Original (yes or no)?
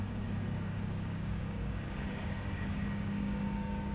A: no